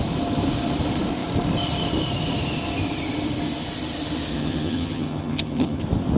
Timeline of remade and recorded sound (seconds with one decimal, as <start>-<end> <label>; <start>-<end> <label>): 0.0-4.3 recorded; 4.3-5.8 remade; 5.8-6.2 recorded

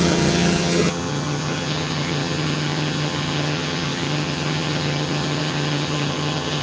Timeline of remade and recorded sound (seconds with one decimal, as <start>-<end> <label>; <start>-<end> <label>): 0.0-6.6 remade

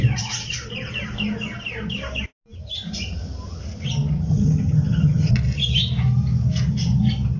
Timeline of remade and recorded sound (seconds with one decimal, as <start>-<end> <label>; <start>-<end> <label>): 0.0-4.3 recorded; 4.3-5.3 remade; 5.3-7.4 recorded

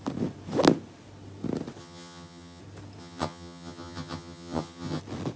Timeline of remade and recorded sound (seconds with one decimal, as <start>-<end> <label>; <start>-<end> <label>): 0.0-1.8 recorded; 1.8-2.6 remade; 2.6-3.0 recorded; 3.0-5.0 remade; 5.0-5.4 recorded